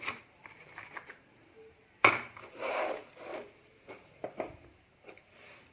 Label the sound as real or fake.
fake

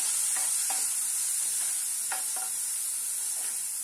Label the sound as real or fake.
real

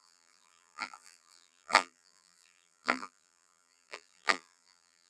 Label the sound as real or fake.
fake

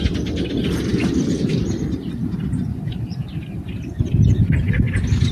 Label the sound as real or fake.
fake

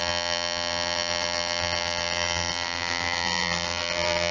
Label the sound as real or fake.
fake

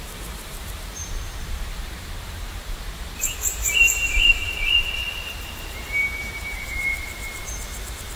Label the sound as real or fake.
fake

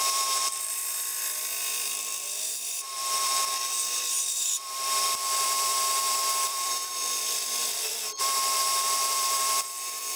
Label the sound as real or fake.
fake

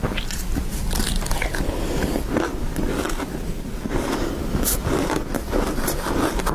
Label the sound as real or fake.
fake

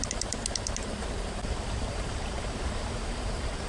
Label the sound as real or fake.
fake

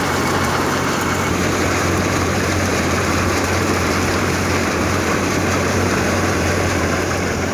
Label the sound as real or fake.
fake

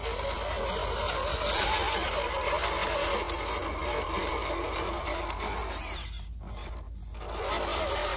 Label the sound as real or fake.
real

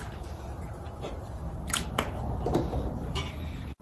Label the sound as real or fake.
fake